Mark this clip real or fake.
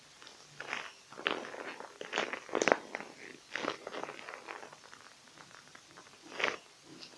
real